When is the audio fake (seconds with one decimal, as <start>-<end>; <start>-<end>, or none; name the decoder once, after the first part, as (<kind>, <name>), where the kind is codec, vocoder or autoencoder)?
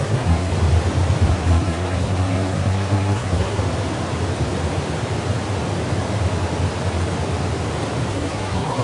0.0-0.5 (codec, SNAC); 1.3-3.6; 8.1-8.8